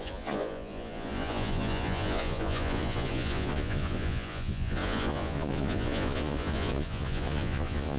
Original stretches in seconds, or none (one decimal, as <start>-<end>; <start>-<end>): none